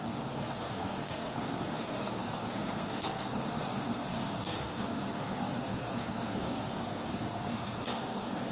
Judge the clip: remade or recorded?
remade